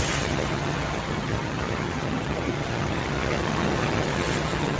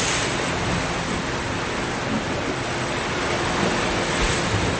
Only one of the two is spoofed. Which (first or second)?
first